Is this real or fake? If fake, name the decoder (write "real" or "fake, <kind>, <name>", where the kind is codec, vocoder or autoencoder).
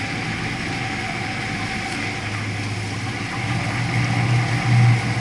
real